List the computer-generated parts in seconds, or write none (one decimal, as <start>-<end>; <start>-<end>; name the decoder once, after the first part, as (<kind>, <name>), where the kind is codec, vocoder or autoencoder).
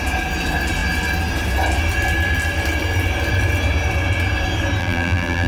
4.8-5.5 (vocoder, BigVGAN v2)